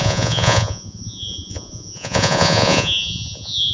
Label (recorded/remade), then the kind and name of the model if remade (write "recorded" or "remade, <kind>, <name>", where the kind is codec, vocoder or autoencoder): remade, vocoder, Vocos